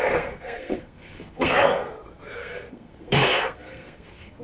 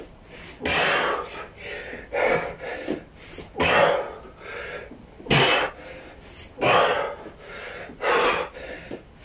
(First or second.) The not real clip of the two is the first